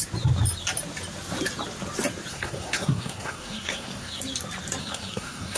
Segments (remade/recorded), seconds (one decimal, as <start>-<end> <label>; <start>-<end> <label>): 0.0-2.3 recorded; 2.3-4.2 remade; 4.2-4.8 recorded; 4.8-5.6 remade